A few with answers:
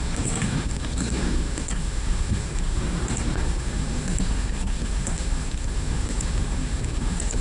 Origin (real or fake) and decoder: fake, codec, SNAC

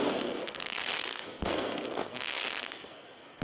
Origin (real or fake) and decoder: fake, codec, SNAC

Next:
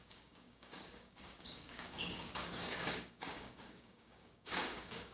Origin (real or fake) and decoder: fake, codec, DAC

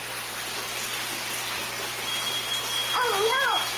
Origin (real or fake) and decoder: real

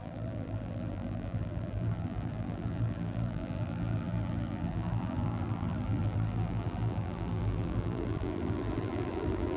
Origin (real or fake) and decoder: fake, vocoder, BigVGAN v2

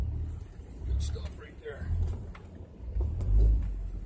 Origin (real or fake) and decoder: fake, vocoder, BigVGAN v2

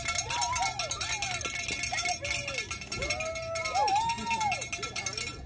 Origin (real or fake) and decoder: real